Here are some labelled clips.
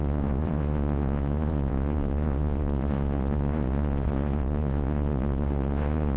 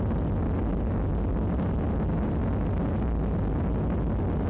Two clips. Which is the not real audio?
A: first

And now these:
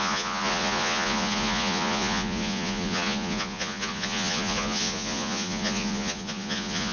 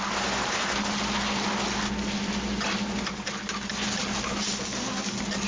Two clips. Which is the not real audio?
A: first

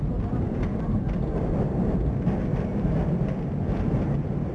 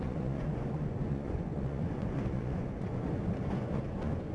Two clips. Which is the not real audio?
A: second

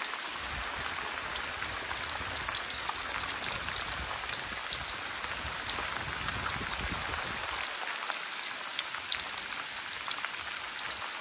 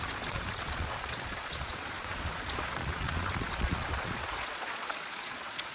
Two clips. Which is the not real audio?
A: second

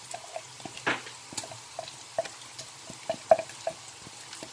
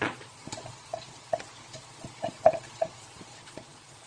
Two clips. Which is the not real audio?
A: second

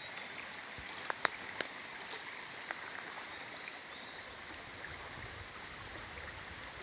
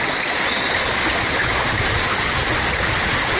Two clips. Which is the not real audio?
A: second